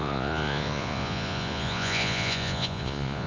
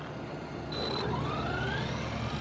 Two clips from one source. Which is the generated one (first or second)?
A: first